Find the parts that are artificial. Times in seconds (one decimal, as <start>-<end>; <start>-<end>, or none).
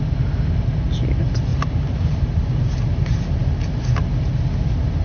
1.5-2.7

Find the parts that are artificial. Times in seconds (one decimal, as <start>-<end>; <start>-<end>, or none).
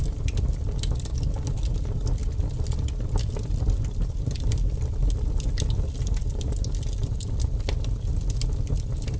none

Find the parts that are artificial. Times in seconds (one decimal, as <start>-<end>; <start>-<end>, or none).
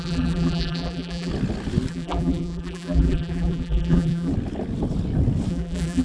0.0-1.3; 1.9-4.3; 5.5-6.0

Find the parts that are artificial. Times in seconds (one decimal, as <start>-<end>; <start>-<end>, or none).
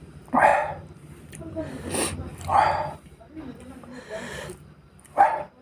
0.0-0.5; 1.3-2.5; 3.0-5.6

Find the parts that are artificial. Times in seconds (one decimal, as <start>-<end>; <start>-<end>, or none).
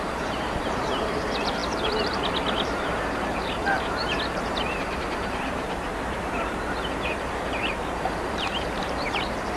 0.0-9.6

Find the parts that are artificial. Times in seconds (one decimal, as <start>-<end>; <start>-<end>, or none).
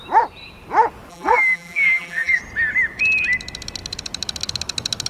1.1-2.4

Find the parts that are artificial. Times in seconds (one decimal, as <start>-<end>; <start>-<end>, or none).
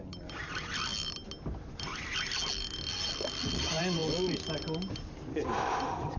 0.0-0.9; 1.5-2.1; 2.9-4.0; 5.3-6.2